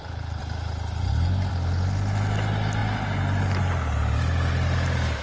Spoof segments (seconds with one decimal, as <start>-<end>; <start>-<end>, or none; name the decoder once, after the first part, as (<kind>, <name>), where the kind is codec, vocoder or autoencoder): none

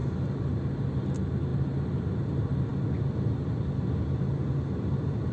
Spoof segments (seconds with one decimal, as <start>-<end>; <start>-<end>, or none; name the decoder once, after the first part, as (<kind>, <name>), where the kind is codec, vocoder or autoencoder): 0.9-2.7 (vocoder, BigVGAN v2)

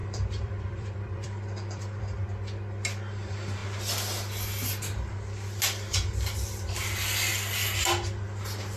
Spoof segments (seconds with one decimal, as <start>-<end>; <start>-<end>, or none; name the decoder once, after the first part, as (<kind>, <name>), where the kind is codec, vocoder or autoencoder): 0.0-2.0 (vocoder, BigVGAN v2)

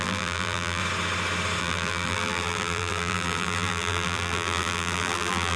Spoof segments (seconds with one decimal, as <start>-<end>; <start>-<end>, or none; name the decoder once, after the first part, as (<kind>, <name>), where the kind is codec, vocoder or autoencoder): 0.0-0.8 (vocoder, BigVGAN v2); 1.6-5.6

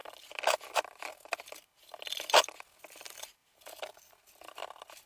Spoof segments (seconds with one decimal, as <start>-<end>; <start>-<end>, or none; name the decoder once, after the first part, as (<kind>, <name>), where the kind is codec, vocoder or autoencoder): none

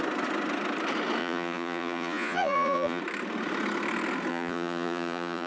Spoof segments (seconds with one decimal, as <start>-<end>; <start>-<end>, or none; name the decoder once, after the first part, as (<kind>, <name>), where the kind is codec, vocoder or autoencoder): 1.2-3.0 (vocoder, Vocos); 4.3-5.5

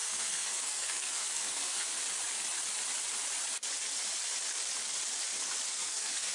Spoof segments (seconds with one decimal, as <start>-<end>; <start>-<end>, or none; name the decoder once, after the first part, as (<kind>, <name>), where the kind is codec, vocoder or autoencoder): 0.0-1.9 (codec, SNAC); 5.7-6.3